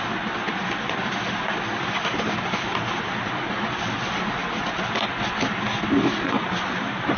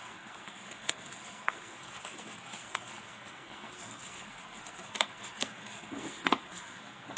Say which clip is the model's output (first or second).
second